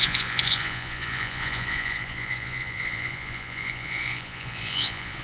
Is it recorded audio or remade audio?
remade